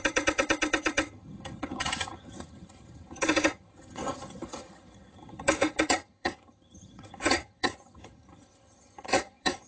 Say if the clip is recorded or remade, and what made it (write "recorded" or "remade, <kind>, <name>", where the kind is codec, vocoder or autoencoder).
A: remade, vocoder, HiFi-GAN